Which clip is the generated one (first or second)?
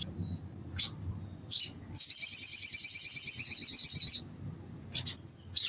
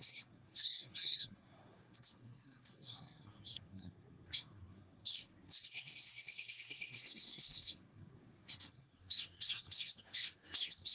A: second